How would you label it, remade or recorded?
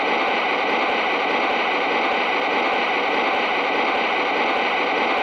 remade